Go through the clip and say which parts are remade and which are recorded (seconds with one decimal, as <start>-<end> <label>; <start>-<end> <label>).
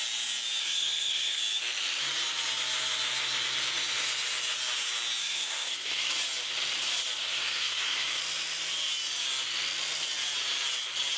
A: 0.0-0.6 recorded; 0.6-1.4 remade; 1.4-5.2 recorded; 5.2-6.1 remade; 6.1-7.2 recorded; 7.2-8.2 remade; 8.2-11.2 recorded